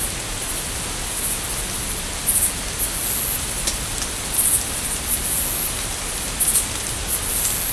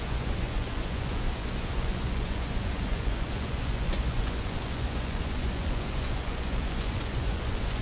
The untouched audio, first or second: first